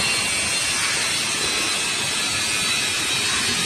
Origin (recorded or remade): recorded